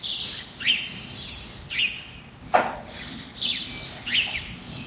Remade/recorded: recorded